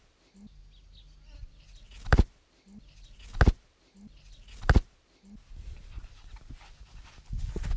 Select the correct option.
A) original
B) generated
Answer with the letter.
A